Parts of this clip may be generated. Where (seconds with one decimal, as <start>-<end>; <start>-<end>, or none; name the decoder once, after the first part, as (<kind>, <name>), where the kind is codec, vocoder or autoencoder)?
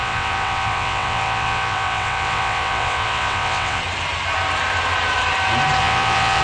0.0-3.8 (vocoder, WaveNeXt); 5.8-6.4